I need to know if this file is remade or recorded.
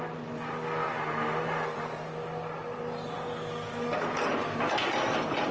recorded